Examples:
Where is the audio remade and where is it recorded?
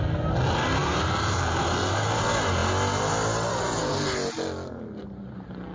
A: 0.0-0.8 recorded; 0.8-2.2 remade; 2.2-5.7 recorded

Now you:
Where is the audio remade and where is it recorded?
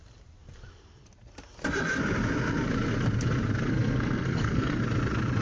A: 0.0-3.6 recorded; 3.6-4.8 remade; 4.8-5.4 recorded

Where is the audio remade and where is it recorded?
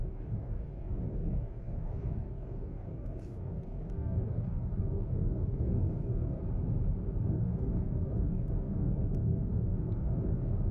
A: 0.0-6.4 remade; 6.4-7.3 recorded; 7.3-10.7 remade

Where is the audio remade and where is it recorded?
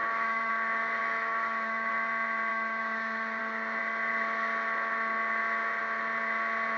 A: 0.0-0.5 remade; 0.5-1.0 recorded; 1.0-1.9 remade; 1.9-2.5 recorded; 2.5-3.4 remade; 3.4-6.8 recorded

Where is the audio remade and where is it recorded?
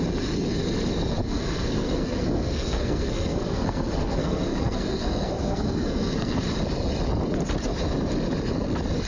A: 0.0-1.2 recorded; 1.2-6.4 remade; 6.4-9.1 recorded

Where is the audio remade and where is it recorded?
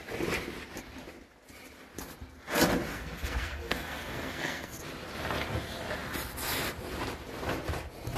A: 0.0-2.9 recorded; 2.9-4.8 remade; 4.8-8.2 recorded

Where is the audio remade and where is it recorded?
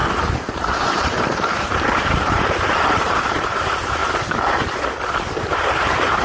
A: 0.0-4.0 remade; 4.0-5.4 recorded; 5.4-6.2 remade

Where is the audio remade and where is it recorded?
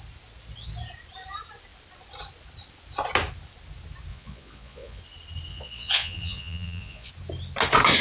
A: 0.0-4.1 recorded; 4.1-5.0 remade; 5.0-5.5 recorded; 5.5-7.1 remade; 7.1-8.0 recorded